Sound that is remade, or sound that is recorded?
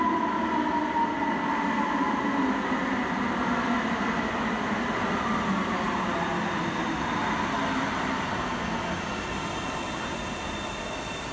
recorded